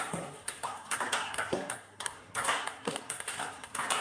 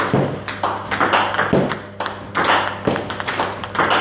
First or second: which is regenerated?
first